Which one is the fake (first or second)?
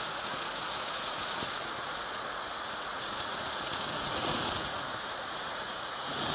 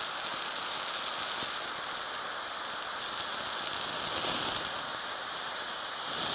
first